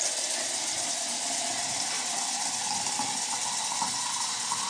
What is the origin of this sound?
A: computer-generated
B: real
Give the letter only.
B